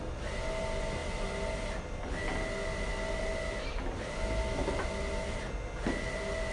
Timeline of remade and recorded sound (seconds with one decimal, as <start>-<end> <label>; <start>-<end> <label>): 0.0-6.5 recorded

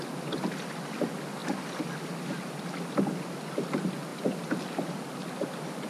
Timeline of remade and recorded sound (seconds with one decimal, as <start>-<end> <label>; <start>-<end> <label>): 0.0-5.9 recorded

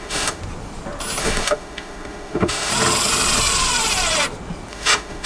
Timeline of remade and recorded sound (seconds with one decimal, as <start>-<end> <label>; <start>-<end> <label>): 0.0-0.4 remade; 0.4-1.2 recorded; 1.2-2.7 remade; 2.7-4.7 recorded; 4.7-5.3 remade

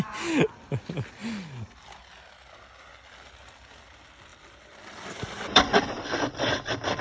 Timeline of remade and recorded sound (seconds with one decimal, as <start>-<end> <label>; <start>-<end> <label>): 0.0-4.3 recorded; 4.3-6.5 remade; 6.5-7.0 recorded

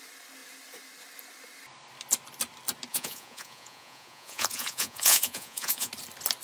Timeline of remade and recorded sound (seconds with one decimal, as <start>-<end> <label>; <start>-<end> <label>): 0.0-2.9 recorded; 2.9-5.9 remade; 5.9-6.4 recorded

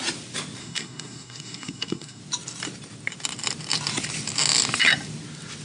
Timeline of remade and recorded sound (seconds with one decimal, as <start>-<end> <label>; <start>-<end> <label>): 0.0-0.6 recorded; 0.6-2.2 remade; 2.2-5.6 recorded